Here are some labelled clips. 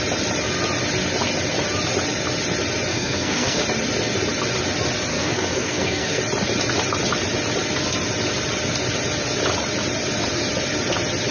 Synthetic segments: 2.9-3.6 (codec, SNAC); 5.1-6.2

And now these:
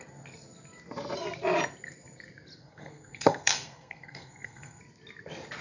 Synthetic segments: 2.6-4.8 (codec, SNAC)

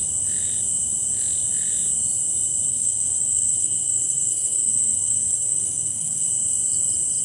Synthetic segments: 2.7-6.3 (codec, SNAC)

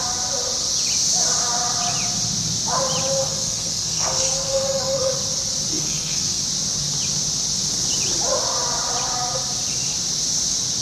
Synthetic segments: 3.2-5.1 (codec, SNAC); 5.7-6.4